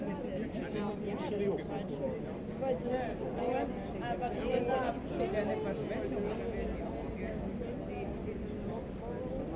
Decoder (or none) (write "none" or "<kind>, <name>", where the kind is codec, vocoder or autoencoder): none